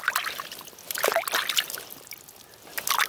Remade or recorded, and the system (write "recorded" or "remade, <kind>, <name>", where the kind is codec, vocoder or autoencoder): recorded